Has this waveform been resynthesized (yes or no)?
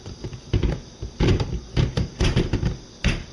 no